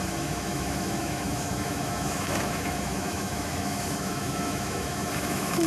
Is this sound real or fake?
fake